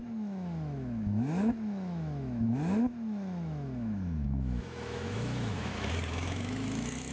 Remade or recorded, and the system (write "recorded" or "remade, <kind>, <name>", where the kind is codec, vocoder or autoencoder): remade, autoencoder, DAC-VAE